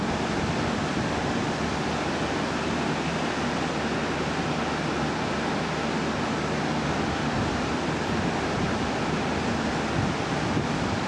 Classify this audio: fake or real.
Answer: real